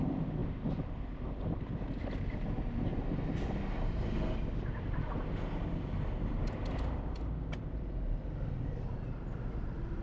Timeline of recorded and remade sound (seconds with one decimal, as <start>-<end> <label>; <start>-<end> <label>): 0.0-10.0 recorded

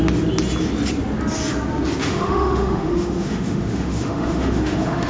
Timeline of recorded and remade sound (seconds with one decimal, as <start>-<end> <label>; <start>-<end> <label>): 0.0-2.0 recorded; 2.0-5.1 remade

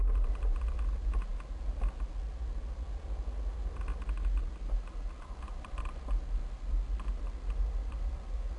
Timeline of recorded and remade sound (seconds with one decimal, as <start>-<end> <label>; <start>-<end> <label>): 0.0-8.6 recorded

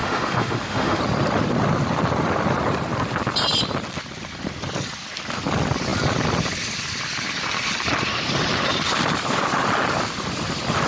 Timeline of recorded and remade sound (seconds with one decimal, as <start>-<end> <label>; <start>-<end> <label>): 0.0-1.0 remade; 1.0-10.9 recorded

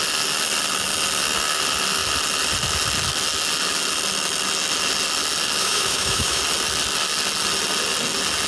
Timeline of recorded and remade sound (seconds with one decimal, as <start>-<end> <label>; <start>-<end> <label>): 0.0-5.6 recorded; 5.6-6.4 remade; 6.4-8.5 recorded

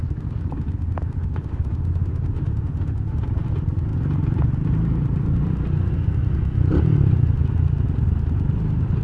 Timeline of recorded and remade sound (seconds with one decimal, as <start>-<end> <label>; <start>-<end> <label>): 0.0-1.2 recorded; 1.2-3.2 remade; 3.2-9.0 recorded

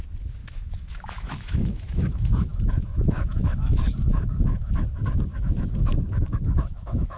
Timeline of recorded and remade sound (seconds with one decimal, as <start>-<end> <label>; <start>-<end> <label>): 0.0-0.4 recorded; 0.4-4.7 remade; 4.7-5.3 recorded; 5.3-7.2 remade